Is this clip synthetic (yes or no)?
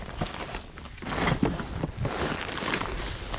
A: no